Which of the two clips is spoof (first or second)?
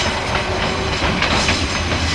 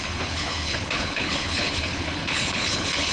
second